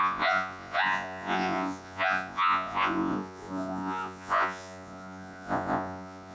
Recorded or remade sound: remade